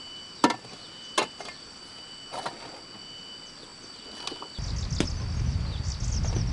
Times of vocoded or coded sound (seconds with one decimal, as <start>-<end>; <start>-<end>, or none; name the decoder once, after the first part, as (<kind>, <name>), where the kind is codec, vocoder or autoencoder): none